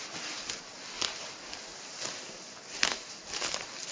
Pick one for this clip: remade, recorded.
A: remade